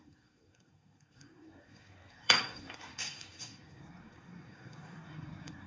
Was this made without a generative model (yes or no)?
no